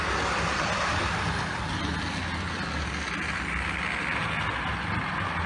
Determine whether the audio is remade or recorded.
recorded